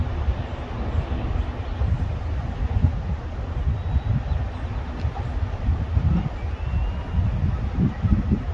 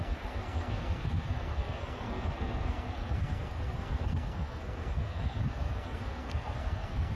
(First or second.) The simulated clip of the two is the second